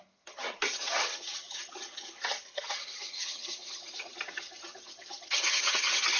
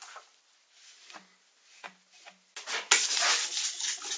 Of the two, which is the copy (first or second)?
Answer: first